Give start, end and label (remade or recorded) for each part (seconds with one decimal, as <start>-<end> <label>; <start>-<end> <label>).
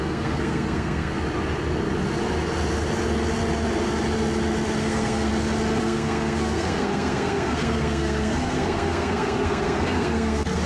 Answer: 0.0-1.2 remade; 1.2-4.8 recorded; 4.8-5.3 remade; 5.3-5.8 recorded; 5.8-10.7 remade